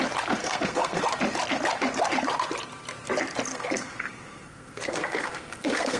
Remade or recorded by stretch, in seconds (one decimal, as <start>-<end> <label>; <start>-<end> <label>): 0.0-0.4 recorded; 0.4-1.0 remade; 1.0-3.5 recorded; 3.5-6.0 remade